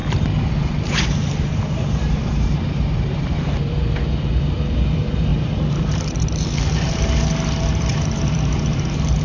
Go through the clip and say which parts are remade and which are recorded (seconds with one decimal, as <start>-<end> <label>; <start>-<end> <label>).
0.0-9.2 remade

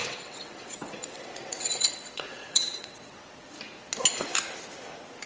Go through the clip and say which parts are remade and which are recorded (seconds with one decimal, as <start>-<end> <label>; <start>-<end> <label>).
0.0-3.2 remade; 3.2-5.3 recorded